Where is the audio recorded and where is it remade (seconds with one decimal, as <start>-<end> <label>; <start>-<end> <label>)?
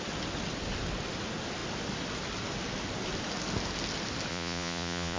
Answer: 0.0-4.3 recorded; 4.3-5.2 remade